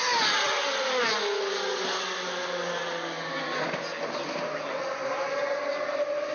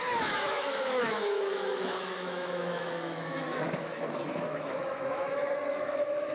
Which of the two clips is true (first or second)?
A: first